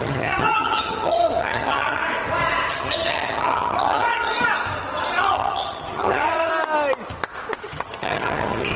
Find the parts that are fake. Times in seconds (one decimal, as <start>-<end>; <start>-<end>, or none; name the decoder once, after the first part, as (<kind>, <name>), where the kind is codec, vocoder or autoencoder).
0.0-2.0 (vocoder, HiFi-GAN); 2.7-4.3; 5.2-6.5; 7.6-8.8